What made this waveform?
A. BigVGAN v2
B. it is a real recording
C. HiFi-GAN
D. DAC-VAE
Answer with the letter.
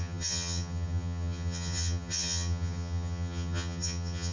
C